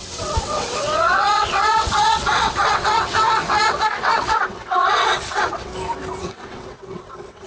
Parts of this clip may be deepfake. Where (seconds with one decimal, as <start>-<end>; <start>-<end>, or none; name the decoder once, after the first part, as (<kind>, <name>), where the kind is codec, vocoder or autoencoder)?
0.0-5.7 (vocoder, WaveNeXt); 6.2-7.5